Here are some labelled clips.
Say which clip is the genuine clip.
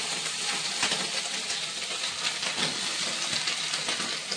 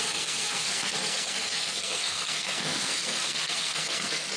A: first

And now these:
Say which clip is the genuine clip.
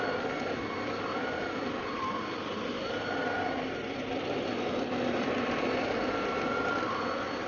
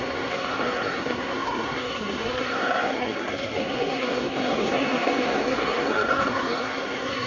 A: first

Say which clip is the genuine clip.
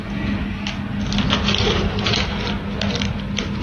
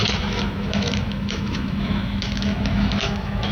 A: first